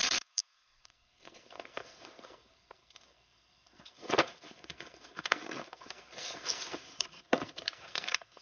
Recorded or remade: remade